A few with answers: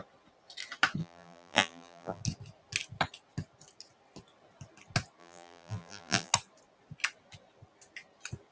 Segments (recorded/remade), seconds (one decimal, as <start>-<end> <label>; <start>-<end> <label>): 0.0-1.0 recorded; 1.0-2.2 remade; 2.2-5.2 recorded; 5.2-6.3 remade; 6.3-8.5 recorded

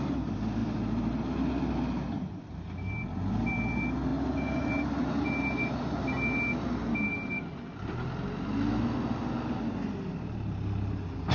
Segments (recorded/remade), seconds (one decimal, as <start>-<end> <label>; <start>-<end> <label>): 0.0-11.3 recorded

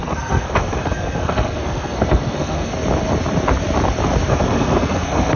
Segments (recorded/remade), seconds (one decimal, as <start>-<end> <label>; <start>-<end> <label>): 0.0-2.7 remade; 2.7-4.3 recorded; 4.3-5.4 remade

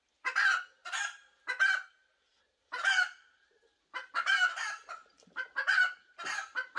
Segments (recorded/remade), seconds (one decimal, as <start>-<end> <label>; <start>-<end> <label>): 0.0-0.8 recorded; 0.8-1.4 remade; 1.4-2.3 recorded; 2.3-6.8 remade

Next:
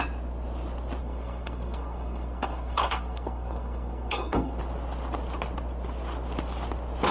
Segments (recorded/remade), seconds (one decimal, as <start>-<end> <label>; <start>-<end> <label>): 0.0-1.0 recorded; 1.0-4.6 remade; 4.6-7.1 recorded

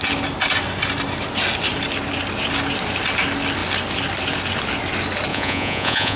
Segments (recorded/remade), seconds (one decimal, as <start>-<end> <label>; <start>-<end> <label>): 0.0-5.3 recorded; 5.3-6.2 remade

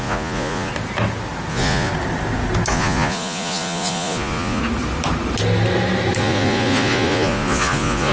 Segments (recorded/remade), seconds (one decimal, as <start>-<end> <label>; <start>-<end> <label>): 0.0-0.7 remade; 0.7-1.5 recorded; 1.5-1.9 remade; 1.9-2.7 recorded; 2.7-4.6 remade; 4.6-6.2 recorded; 6.2-8.1 remade

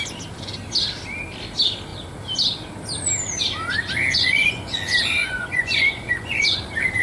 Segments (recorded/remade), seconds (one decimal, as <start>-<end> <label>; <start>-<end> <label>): 0.0-4.0 recorded; 4.0-4.7 remade; 4.7-5.2 recorded; 5.2-6.6 remade; 6.6-7.0 recorded